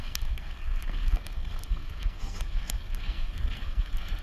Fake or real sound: fake